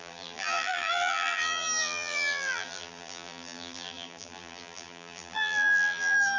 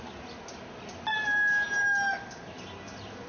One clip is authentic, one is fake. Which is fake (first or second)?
first